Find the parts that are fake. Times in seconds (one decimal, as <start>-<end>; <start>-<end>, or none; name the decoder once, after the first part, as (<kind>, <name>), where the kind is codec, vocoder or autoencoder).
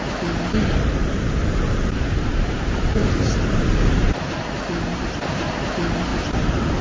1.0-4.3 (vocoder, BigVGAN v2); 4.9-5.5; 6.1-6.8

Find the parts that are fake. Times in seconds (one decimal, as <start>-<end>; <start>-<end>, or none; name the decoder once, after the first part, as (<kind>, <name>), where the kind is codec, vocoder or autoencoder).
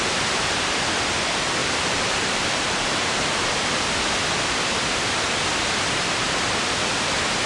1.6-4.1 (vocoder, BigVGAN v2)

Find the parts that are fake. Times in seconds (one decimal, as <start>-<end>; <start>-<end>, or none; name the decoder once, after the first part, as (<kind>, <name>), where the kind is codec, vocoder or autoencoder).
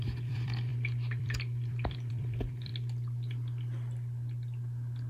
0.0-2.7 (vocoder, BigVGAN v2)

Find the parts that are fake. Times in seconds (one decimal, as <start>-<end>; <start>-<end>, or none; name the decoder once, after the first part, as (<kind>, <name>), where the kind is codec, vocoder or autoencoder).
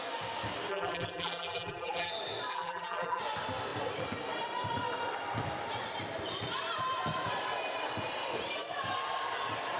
0.7-2.1 (vocoder, BigVGAN v2); 2.5-3.2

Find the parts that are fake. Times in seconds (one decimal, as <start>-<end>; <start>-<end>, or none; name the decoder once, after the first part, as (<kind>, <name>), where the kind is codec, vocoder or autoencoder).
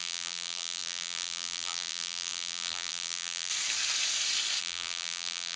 0.0-3.5 (vocoder, BigVGAN v2); 4.6-5.6